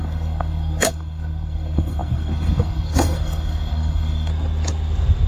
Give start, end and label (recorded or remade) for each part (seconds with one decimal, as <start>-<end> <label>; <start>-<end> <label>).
0.0-4.3 remade; 4.3-5.3 recorded